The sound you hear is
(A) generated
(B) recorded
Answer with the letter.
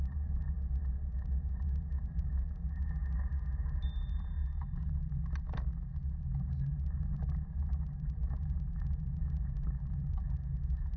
B